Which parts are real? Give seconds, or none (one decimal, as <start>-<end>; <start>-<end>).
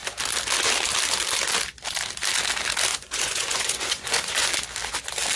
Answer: 0.0-2.9; 4.5-5.4